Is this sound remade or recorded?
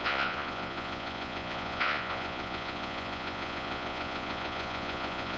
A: remade